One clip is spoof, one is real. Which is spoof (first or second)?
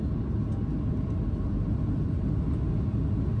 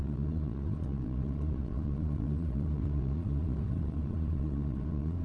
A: second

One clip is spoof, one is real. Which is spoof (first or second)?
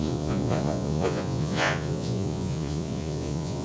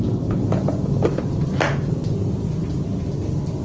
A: first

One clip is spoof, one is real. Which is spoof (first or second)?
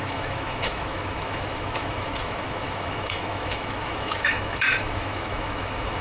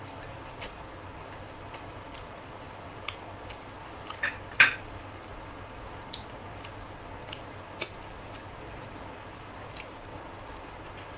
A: first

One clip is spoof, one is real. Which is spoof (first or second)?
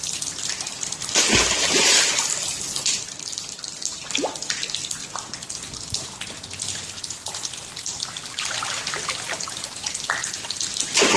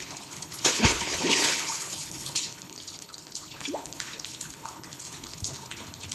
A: second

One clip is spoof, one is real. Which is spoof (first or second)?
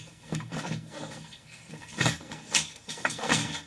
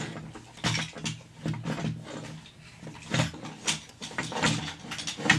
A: first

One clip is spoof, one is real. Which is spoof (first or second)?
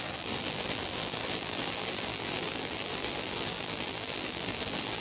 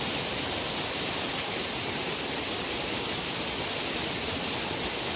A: first